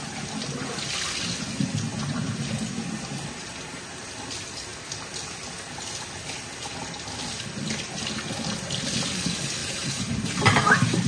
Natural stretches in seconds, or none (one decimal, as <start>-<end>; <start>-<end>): 0.0-1.9; 2.5-9.6